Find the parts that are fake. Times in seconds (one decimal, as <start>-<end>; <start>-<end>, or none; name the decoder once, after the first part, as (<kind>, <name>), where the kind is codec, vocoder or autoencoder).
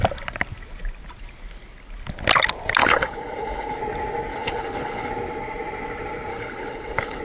2.8-3.8 (codec, HILCodec); 4.3-5.1; 6.3-7.2